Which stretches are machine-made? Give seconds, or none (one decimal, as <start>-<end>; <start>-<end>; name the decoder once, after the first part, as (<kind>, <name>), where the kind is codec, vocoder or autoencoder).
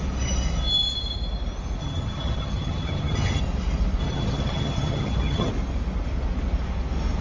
1.8-3.4 (vocoder, HiFi-GAN); 4.0-5.5